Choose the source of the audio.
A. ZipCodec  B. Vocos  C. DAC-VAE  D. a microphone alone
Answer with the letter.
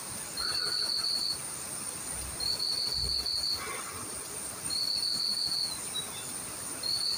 D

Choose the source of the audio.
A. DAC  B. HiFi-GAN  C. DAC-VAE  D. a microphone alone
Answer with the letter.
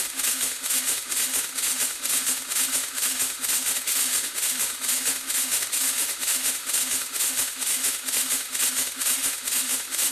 C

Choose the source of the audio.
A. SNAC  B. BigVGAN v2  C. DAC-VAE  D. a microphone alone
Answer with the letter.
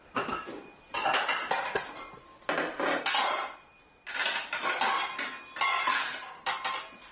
D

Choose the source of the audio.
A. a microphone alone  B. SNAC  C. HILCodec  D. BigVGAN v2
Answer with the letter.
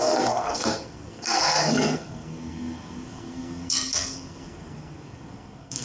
B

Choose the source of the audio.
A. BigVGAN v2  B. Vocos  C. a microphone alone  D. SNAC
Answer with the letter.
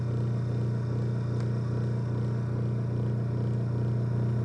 C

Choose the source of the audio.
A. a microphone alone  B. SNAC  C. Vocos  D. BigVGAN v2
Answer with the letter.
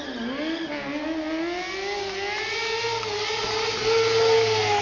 A